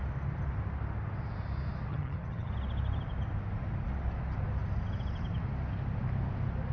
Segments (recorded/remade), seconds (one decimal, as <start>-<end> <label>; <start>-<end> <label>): 0.0-1.9 recorded; 1.9-2.5 remade; 2.5-6.7 recorded